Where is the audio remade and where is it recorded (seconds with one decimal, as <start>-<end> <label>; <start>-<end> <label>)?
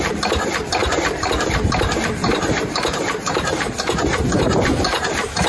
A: 0.0-0.8 recorded; 0.8-1.3 remade; 1.3-2.2 recorded; 2.2-5.5 remade